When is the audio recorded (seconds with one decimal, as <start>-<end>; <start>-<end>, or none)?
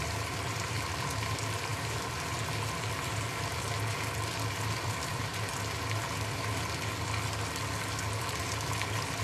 3.5-4.3; 5.3-8.2